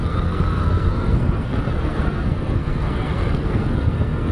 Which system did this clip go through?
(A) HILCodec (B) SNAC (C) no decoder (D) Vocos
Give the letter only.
B